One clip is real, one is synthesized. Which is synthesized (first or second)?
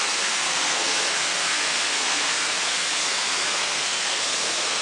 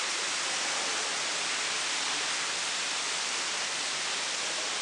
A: first